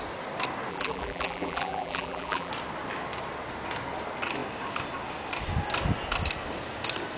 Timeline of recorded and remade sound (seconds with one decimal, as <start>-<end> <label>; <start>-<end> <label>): 0.0-0.7 recorded; 0.7-2.5 remade; 2.5-7.2 recorded